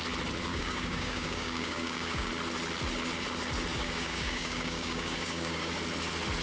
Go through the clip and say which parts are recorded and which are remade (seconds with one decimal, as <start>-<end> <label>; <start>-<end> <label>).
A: 0.0-0.5 recorded; 0.5-2.3 remade; 2.3-3.7 recorded; 3.7-5.7 remade; 5.7-6.4 recorded